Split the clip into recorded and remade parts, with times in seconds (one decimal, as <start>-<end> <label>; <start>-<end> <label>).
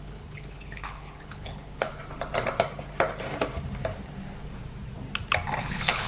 0.0-1.9 remade; 1.9-5.6 recorded; 5.6-6.1 remade